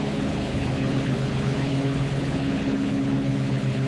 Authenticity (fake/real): fake